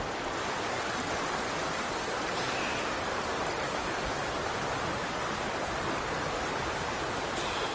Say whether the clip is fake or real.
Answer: real